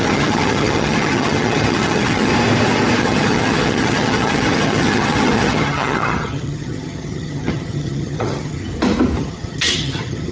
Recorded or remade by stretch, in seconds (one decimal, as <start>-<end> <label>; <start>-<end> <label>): 0.0-2.3 remade; 2.3-3.0 recorded; 3.0-8.6 remade; 8.6-9.2 recorded; 9.2-10.3 remade